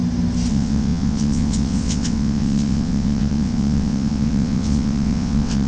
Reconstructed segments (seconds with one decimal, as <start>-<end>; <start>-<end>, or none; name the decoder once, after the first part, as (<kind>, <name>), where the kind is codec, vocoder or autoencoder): 0.5-5.7 (vocoder, WaveNeXt)